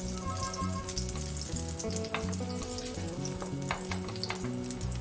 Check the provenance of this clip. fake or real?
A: real